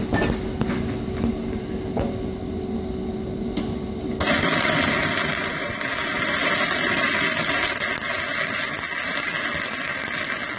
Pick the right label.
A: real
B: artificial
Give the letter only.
A